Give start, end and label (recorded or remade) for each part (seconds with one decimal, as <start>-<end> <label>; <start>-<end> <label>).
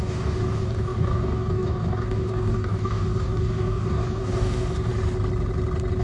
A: 0.0-4.9 remade; 4.9-6.0 recorded